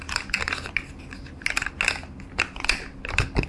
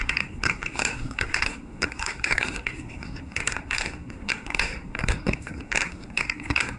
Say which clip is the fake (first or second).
second